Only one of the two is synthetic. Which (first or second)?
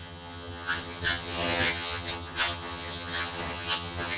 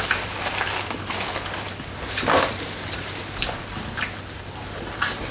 first